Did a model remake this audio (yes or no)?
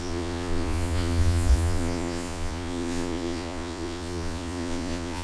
yes